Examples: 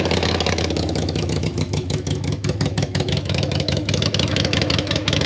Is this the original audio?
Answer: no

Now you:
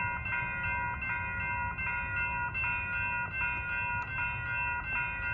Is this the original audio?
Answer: yes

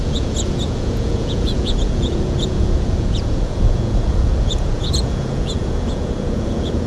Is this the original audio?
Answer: no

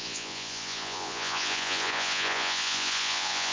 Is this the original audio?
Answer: no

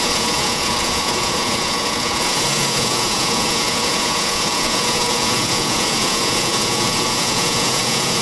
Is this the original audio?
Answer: no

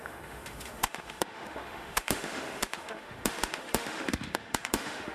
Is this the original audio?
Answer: no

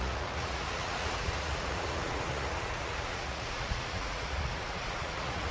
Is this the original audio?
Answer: no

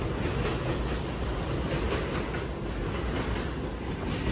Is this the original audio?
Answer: yes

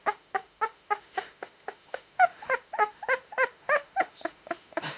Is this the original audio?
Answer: no